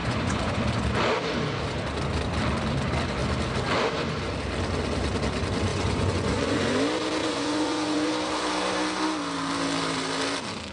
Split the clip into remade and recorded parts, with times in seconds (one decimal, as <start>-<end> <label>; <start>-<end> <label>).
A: 0.0-0.6 remade; 0.6-5.7 recorded; 5.7-6.6 remade; 6.6-7.2 recorded; 7.2-8.1 remade; 8.1-10.7 recorded